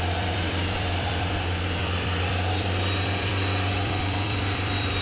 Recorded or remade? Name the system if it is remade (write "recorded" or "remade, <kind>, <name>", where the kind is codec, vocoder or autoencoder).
remade, vocoder, BigVGAN v2